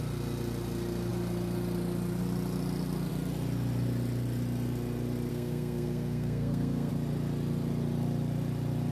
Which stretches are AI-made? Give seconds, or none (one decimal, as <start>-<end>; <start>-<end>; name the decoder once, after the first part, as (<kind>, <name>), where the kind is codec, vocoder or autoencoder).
5.3-6.9 (codec, SNAC)

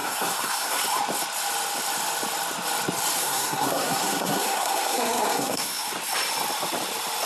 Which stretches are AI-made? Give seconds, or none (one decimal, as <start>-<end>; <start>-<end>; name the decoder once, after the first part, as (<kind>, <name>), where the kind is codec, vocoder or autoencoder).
0.0-0.8 (codec, SNAC); 3.2-5.9

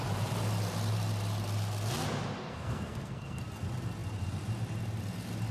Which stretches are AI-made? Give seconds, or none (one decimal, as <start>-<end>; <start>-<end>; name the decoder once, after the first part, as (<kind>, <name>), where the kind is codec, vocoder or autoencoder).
2.4-3.4 (codec, SNAC)

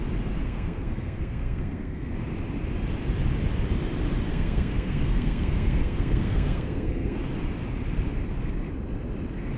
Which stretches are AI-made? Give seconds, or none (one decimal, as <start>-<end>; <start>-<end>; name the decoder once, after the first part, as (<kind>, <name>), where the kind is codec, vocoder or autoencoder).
0.4-2.1 (codec, SNAC); 4.3-7.2